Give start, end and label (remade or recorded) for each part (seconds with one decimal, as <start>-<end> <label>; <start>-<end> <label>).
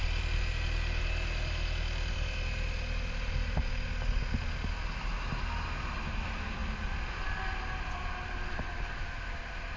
0.0-9.8 recorded